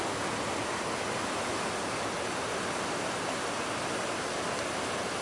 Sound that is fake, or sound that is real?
real